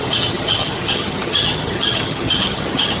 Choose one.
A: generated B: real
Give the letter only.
A